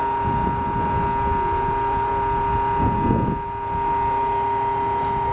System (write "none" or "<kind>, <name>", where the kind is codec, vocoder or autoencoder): none